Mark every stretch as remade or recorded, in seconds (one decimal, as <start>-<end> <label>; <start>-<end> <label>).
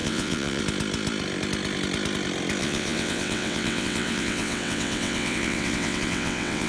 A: 0.0-0.6 remade; 0.6-2.6 recorded; 2.6-6.7 remade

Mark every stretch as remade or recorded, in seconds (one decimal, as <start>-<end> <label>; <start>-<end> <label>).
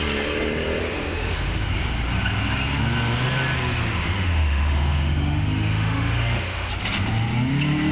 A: 0.0-0.8 recorded; 0.8-1.7 remade; 1.7-3.9 recorded; 3.9-6.7 remade; 6.7-7.9 recorded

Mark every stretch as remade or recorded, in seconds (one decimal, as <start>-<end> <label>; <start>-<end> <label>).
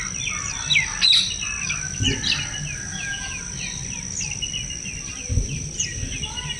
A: 0.0-2.9 recorded; 2.9-3.4 remade; 3.4-6.6 recorded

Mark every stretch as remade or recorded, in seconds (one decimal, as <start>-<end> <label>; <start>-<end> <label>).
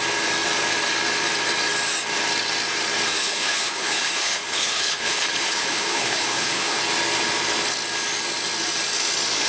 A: 0.0-3.2 recorded; 3.2-6.8 remade; 6.8-9.5 recorded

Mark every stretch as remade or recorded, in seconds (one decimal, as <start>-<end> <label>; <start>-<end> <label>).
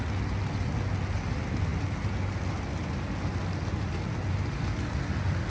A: 0.0-5.5 recorded